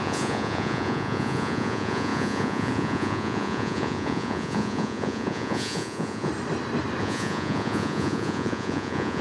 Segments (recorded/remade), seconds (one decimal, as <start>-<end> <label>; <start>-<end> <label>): 0.0-6.3 remade; 6.3-7.0 recorded; 7.0-9.2 remade